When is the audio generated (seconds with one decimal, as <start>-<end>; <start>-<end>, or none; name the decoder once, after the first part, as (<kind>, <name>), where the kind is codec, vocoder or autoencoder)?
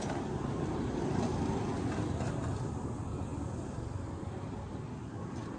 none